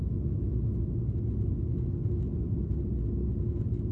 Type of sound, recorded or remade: recorded